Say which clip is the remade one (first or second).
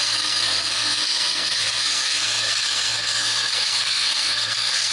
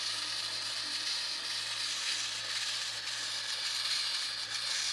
first